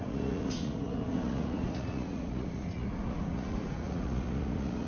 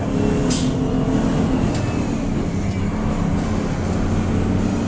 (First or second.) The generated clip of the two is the first